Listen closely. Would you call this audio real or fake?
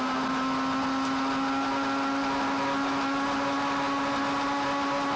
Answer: real